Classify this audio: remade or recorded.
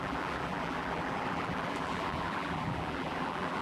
remade